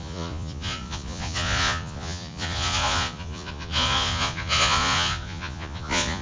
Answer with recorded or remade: remade